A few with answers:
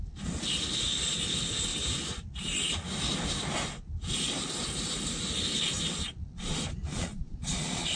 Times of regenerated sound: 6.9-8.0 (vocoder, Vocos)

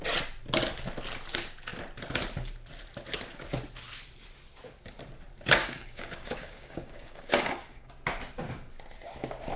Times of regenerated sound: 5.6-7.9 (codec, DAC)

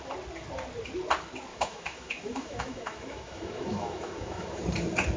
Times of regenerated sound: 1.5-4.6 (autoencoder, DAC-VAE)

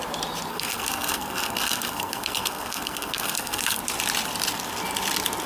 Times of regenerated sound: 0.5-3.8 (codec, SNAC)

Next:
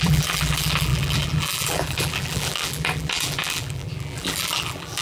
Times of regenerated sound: 0.0-5.0 (vocoder, BigVGAN v2)

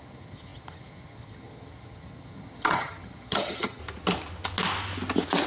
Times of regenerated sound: 0.0-3.8 (vocoder, HiFi-GAN)

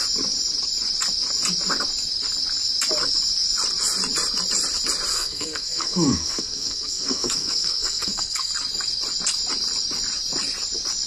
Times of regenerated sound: 5.1-8.5 (codec, SNAC)